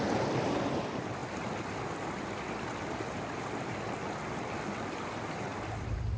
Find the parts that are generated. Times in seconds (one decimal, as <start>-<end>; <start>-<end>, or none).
0.0-1.2; 4.4-6.2